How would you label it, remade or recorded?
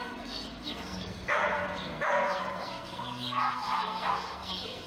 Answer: remade